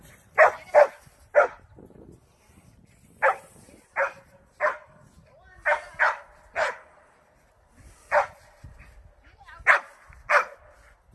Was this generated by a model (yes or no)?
no